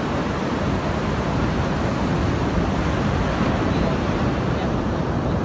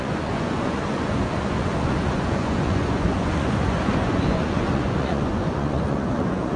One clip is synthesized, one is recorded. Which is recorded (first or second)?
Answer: first